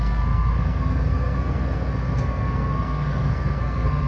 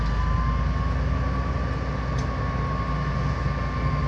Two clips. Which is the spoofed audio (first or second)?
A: first